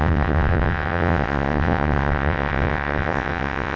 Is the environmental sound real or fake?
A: fake